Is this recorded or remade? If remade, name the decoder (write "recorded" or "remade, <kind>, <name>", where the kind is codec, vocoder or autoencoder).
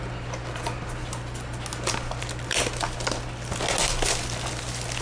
recorded